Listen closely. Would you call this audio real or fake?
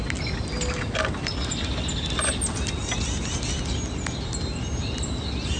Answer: real